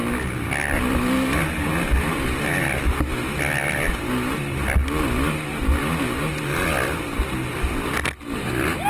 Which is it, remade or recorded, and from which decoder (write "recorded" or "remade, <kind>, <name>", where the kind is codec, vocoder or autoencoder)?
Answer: recorded